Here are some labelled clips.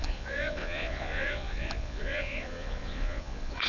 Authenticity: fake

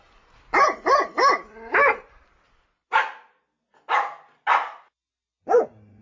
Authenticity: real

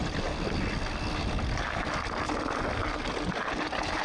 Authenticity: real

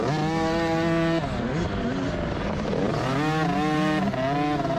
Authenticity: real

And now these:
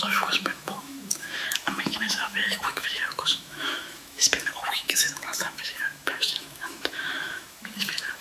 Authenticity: fake